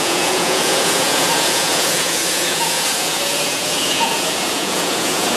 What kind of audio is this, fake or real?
fake